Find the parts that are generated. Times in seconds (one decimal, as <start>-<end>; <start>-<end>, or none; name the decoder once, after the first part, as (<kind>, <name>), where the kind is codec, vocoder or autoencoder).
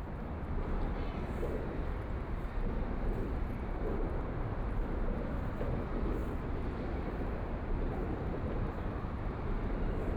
8.0-8.8 (vocoder, BigVGAN v2)